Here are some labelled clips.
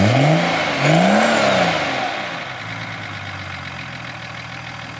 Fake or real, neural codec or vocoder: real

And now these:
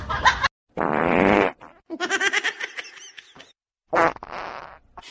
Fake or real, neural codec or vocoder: real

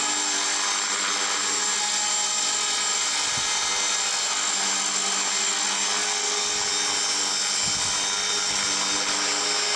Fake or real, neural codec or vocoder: real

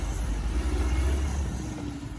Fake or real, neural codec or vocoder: real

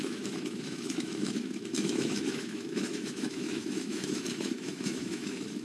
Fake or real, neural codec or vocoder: fake, autoencoder, DAC-VAE